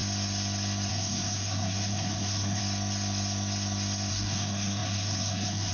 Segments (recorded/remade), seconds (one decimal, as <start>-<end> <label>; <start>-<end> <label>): 0.0-0.9 recorded; 0.9-2.6 remade; 2.6-4.1 recorded; 4.1-5.7 remade